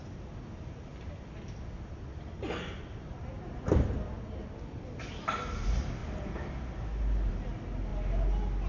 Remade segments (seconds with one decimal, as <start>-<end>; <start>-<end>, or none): none